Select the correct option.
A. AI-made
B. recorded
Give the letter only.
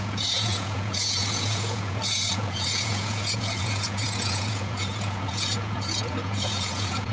A